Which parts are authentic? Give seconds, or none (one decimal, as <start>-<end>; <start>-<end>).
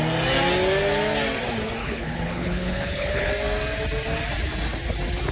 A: 0.0-1.8; 3.3-5.3